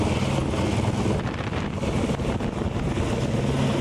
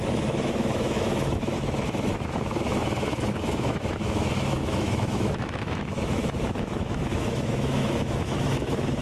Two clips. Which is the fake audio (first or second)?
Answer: second